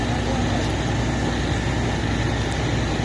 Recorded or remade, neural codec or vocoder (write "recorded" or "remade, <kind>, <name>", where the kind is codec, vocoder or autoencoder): recorded